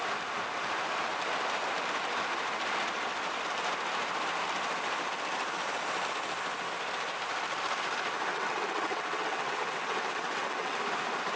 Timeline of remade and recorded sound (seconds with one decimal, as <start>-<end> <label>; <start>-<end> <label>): 0.0-8.3 recorded; 8.3-10.8 remade; 10.8-11.4 recorded